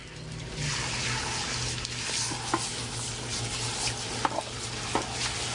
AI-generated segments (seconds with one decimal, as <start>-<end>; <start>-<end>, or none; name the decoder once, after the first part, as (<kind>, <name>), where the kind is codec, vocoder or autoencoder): none